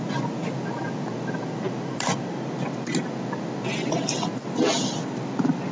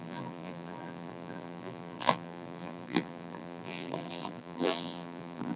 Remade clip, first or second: second